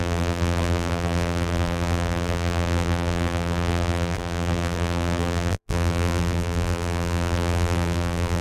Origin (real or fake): fake